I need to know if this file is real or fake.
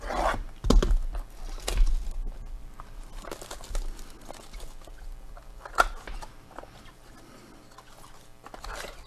real